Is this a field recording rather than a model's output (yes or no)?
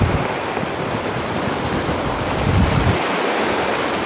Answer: yes